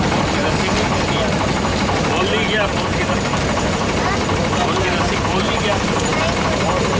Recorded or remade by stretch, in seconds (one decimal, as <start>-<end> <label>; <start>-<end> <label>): 0.0-2.7 recorded; 2.7-4.3 remade; 4.3-7.0 recorded